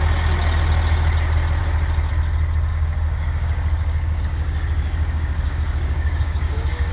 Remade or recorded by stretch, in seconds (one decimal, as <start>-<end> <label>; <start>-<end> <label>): 0.0-2.7 recorded; 2.7-6.9 remade